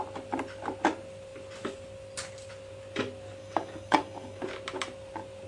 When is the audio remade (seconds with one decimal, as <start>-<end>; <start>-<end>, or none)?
3.4-4.4